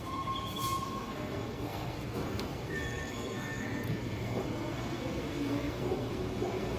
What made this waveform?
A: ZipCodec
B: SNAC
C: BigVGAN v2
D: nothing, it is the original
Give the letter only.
B